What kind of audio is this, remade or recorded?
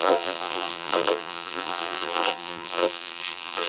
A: remade